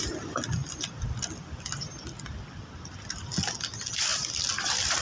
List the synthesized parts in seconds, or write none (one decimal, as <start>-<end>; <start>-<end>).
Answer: none